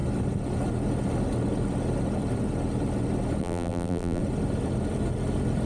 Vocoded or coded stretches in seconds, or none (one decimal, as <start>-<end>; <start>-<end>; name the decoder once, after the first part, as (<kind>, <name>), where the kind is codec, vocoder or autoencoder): 3.4-4.2 (vocoder, BigVGAN v2)